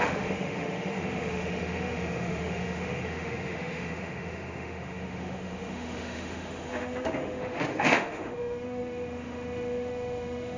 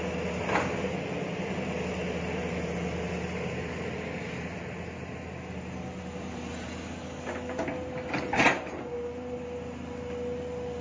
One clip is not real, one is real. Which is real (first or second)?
second